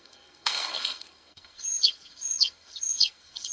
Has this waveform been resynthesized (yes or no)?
yes